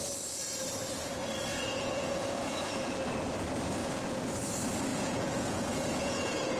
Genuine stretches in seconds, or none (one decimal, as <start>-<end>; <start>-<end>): 0.0-1.5; 3.3-3.8; 4.4-4.9